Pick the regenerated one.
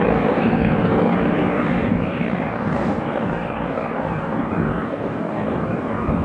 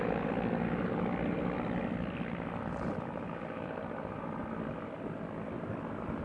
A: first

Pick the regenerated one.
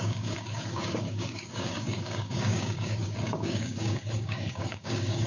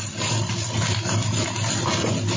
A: first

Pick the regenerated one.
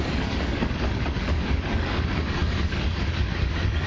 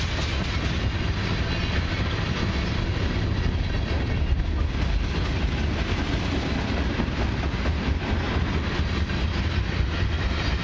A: first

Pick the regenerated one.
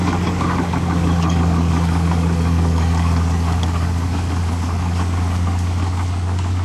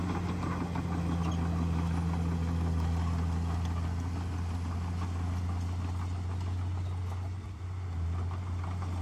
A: first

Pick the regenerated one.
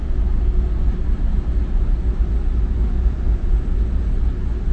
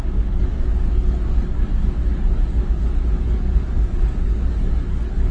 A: second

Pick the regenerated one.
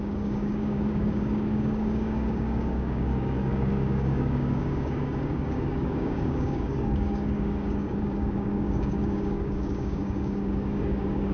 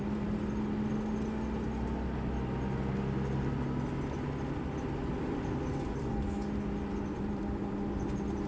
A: first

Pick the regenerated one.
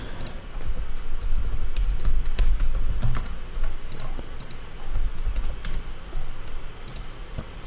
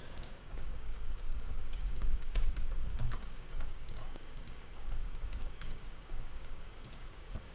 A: second